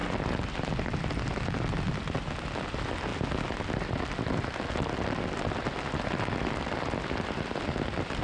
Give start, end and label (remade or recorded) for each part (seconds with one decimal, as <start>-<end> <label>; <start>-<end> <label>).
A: 0.0-8.2 recorded